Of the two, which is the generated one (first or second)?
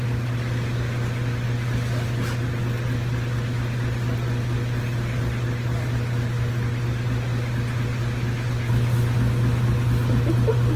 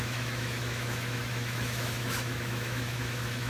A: second